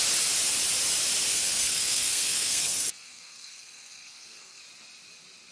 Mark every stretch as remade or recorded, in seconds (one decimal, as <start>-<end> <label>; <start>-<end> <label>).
0.0-1.3 recorded; 1.3-4.6 remade; 4.6-5.5 recorded